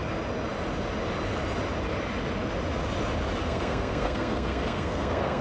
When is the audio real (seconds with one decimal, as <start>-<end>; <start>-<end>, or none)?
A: 0.0-3.4